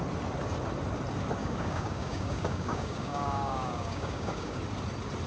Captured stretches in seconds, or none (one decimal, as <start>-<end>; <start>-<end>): 0.0-1.4; 4.6-5.3